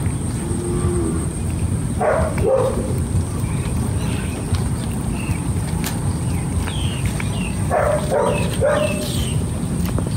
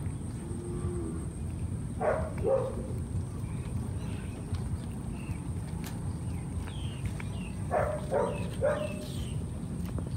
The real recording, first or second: second